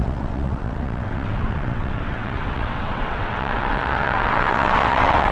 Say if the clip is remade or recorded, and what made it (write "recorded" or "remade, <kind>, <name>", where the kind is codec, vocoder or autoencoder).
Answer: remade, vocoder, WaveNeXt